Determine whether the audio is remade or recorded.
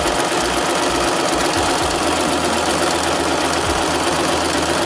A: recorded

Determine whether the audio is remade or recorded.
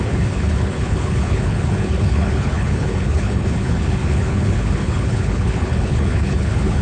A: remade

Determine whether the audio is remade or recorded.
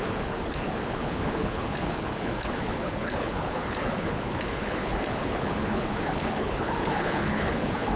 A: remade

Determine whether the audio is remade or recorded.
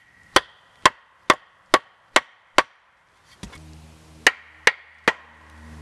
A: recorded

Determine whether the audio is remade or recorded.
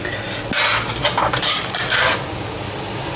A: recorded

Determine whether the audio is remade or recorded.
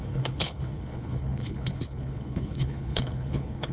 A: remade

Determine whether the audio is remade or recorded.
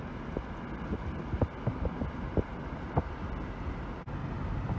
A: recorded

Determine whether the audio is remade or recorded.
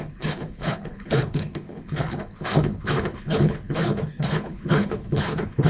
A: remade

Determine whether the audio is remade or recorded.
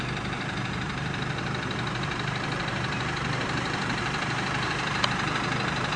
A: recorded